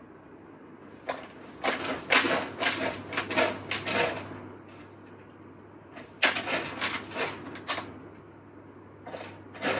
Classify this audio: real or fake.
real